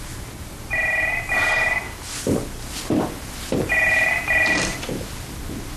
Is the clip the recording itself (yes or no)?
yes